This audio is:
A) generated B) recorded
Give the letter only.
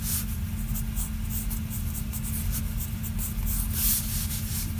B